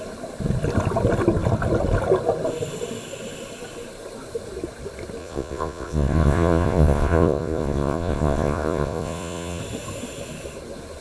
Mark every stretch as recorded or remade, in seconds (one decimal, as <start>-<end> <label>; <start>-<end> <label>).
0.0-5.2 recorded; 5.2-9.6 remade; 9.6-11.0 recorded